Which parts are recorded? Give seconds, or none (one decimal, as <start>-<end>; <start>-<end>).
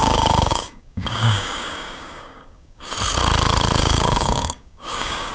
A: 2.9-3.8